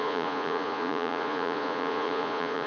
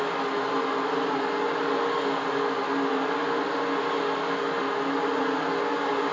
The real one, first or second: second